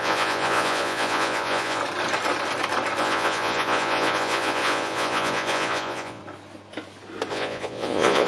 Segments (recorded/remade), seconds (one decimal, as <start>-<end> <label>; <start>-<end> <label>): 0.0-1.8 remade; 1.8-3.0 recorded; 3.0-6.2 remade; 6.2-7.3 recorded; 7.3-8.3 remade